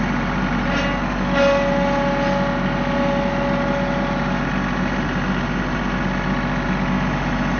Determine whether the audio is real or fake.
real